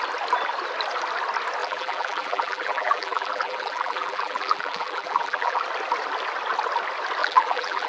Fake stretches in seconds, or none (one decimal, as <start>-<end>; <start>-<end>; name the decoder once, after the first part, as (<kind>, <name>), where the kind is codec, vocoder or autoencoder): 1.6-5.6 (vocoder, BigVGAN v2); 7.2-7.9